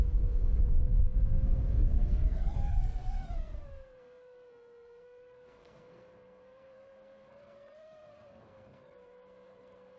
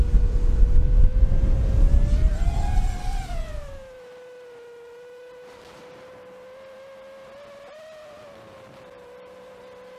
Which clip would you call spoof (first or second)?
first